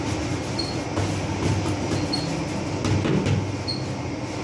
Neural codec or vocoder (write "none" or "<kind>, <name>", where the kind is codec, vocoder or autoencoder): none